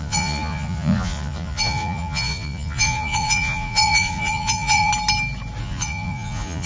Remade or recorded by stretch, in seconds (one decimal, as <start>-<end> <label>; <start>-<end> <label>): 0.0-4.9 remade; 4.9-5.6 recorded; 5.6-6.7 remade